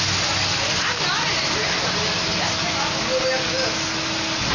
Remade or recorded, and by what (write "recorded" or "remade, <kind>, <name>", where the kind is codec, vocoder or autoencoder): recorded